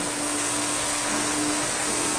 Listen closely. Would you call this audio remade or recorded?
remade